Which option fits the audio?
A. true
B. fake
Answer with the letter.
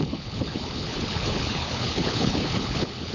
B